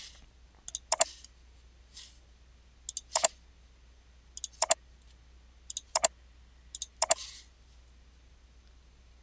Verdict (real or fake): real